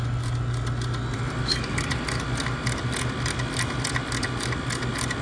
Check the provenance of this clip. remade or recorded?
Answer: recorded